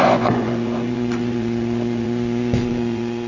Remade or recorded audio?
remade